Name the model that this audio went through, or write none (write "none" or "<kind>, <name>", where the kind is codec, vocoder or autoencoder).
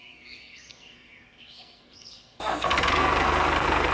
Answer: codec, SNAC